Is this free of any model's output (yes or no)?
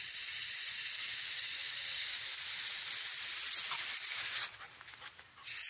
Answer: yes